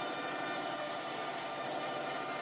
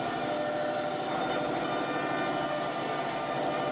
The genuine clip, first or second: second